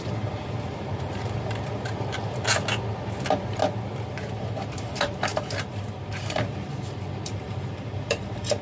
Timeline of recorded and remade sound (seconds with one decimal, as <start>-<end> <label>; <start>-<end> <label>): 0.0-2.5 remade; 2.5-4.3 recorded; 4.3-8.6 remade